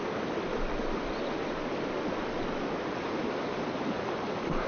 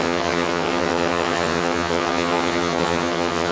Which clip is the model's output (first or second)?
second